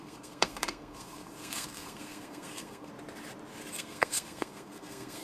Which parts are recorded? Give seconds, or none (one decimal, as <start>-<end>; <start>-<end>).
2.9-3.7